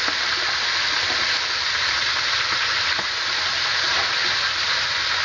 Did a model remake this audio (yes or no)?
no